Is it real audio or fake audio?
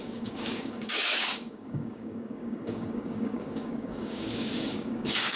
fake